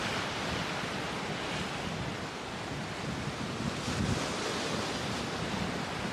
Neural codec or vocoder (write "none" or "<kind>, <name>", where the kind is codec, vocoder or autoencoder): none